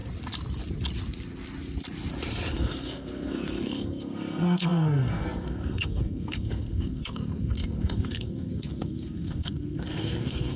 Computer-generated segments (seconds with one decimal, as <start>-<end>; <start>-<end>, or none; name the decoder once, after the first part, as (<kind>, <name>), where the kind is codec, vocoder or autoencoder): 2.5-10.6 (codec, SNAC)